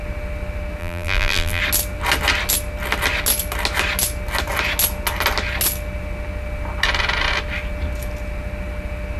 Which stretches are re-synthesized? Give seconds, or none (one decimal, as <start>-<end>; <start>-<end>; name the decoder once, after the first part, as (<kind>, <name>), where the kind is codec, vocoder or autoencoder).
0.8-1.6 (vocoder, BigVGAN v2)